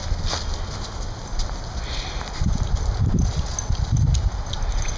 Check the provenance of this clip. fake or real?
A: real